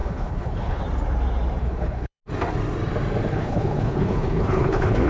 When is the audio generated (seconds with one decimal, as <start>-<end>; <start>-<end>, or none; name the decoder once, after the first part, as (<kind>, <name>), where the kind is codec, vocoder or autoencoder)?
0.0-0.8 (codec, HILCodec); 1.6-2.2; 3.3-5.1

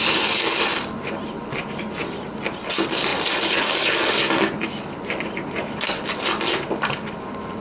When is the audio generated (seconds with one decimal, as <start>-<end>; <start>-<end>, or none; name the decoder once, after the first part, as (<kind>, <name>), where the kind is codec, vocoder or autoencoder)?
none

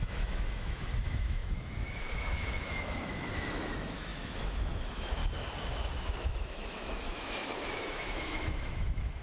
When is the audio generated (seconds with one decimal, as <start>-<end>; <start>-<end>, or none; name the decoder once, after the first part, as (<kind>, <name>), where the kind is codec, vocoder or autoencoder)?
0.0-5.2 (autoencoder, DAC-VAE); 6.2-9.2

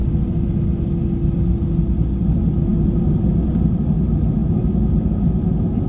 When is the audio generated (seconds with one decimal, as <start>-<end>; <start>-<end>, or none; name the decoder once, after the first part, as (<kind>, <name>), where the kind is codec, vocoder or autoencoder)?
none

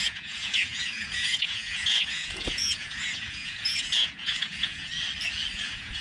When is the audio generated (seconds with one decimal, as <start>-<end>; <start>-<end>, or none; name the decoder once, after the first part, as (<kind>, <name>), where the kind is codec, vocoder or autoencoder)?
0.0-4.9 (vocoder, Vocos); 5.5-6.0

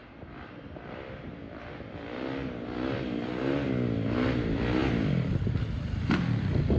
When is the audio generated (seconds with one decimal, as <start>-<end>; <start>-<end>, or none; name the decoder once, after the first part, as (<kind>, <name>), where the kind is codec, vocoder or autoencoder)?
none

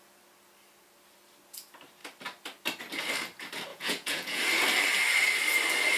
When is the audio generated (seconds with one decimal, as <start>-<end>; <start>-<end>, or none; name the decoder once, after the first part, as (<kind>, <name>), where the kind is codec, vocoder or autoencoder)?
3.7-4.4 (vocoder, Vocos)